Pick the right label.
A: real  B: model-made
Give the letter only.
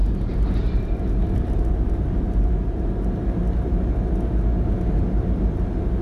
A